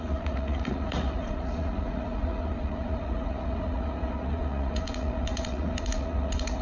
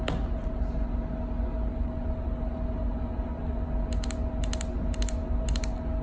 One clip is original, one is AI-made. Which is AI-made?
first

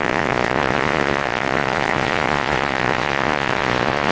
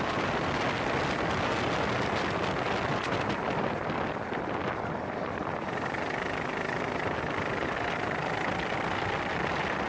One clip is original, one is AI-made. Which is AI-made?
first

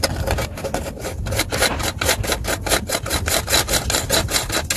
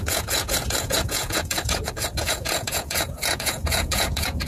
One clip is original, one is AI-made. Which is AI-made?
second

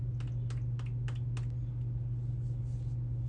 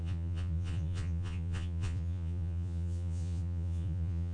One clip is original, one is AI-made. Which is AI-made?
second